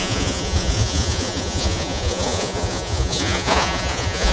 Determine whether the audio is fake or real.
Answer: fake